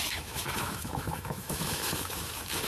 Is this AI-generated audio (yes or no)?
yes